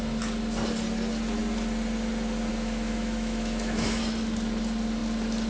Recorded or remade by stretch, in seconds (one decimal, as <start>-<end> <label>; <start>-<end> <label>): 0.0-2.5 recorded; 2.5-4.0 remade; 4.0-5.5 recorded